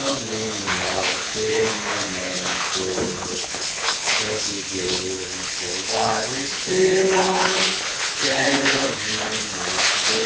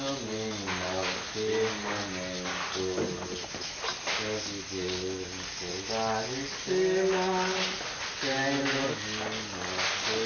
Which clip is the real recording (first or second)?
second